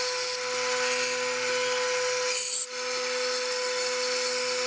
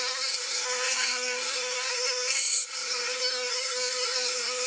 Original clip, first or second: first